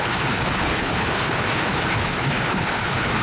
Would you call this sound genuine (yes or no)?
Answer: no